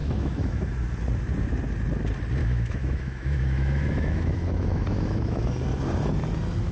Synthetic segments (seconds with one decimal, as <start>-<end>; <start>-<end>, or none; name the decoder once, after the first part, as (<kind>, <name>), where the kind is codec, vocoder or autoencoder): 0.0-0.7 (autoencoder, DAC-VAE); 2.4-5.5